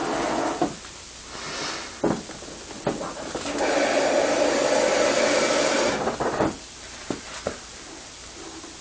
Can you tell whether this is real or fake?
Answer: real